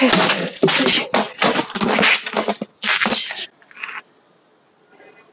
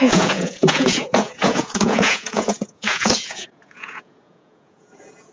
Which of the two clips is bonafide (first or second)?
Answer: first